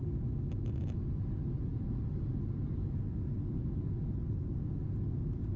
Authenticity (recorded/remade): recorded